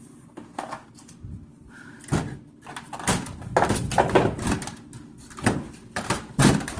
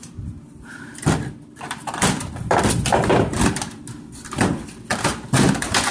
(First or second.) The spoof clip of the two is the second